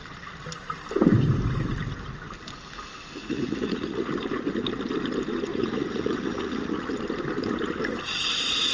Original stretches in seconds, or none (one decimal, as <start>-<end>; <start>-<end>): 0.0-3.2; 4.1-5.5; 6.9-8.7